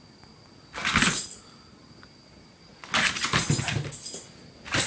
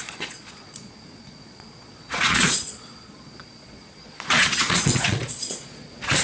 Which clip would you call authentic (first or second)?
first